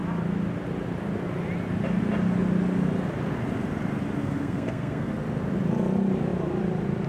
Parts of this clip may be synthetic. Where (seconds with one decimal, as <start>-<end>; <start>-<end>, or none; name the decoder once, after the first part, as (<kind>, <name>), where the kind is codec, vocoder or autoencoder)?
4.2-5.1 (codec, SNAC)